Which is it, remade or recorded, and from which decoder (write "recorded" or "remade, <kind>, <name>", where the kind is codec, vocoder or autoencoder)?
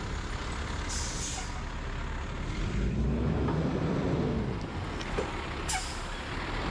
recorded